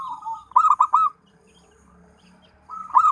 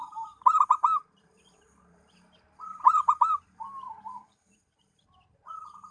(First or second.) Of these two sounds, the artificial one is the second